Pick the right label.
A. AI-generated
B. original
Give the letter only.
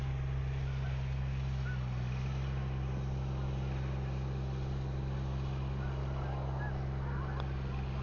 B